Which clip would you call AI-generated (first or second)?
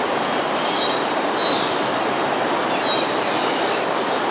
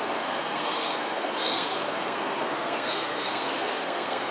second